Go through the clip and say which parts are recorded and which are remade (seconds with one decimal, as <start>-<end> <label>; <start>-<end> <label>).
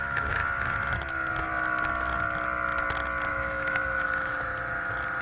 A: 0.0-0.4 remade; 0.4-3.3 recorded; 3.3-4.5 remade; 4.5-5.2 recorded